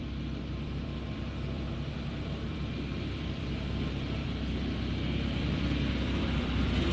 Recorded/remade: remade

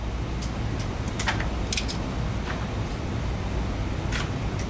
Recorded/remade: recorded